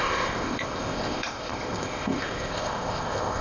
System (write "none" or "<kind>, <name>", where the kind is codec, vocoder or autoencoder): codec, ZipCodec